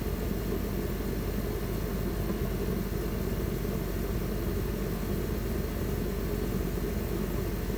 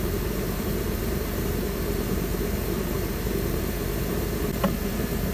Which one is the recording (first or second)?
first